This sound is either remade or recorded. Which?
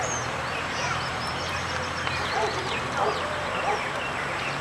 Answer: remade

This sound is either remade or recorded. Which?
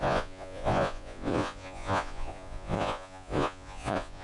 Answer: remade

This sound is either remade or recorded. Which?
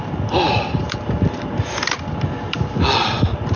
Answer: recorded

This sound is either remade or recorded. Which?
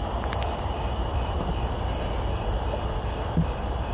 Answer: recorded